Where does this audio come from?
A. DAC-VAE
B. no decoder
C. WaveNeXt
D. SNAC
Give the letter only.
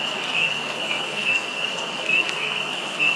D